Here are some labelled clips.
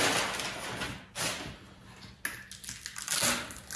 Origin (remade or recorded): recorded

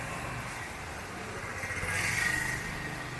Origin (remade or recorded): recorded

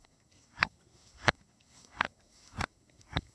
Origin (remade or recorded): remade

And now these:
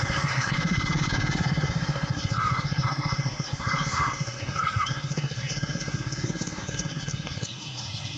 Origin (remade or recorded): remade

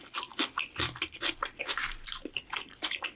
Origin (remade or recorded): recorded